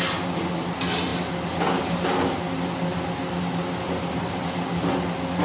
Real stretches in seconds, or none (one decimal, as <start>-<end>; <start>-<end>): 0.0-5.4

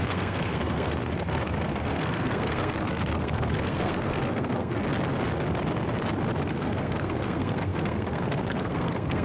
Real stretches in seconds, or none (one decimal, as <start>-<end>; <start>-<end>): 4.8-6.5

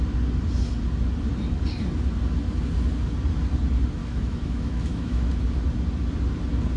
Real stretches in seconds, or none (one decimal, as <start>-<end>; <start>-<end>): 0.0-4.0; 5.3-6.8

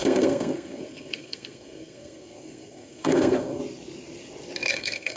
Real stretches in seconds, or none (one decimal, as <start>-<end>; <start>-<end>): 3.6-4.7

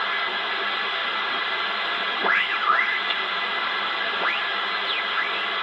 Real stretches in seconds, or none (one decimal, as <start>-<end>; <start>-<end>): 0.0-1.0; 4.4-5.6

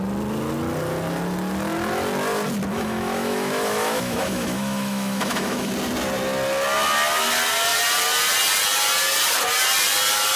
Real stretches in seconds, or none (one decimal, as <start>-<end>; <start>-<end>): 0.0-2.7; 5.7-10.4

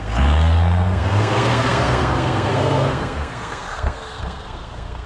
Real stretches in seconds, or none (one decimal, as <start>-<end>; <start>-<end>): none

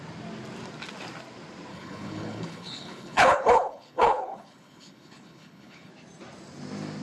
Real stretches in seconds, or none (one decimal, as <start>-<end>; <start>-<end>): 0.0-1.7; 5.9-7.0